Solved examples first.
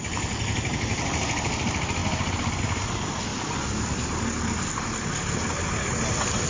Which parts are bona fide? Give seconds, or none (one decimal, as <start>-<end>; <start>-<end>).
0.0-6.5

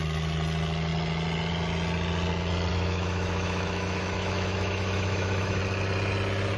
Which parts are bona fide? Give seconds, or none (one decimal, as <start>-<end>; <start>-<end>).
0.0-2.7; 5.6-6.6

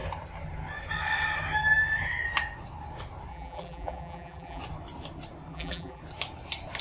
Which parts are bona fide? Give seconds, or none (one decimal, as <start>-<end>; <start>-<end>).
0.0-3.3; 4.6-5.5; 6.0-6.8

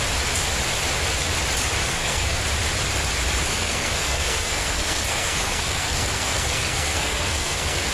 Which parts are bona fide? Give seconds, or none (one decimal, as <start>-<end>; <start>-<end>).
0.0-1.8; 2.4-3.5

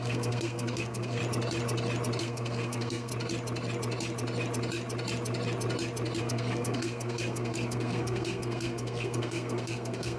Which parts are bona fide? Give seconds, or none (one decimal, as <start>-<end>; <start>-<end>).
1.2-2.2; 3.1-6.2

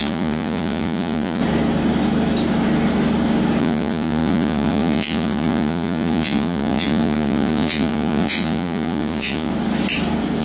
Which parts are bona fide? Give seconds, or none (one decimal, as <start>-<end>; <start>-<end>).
1.4-3.6; 9.5-10.4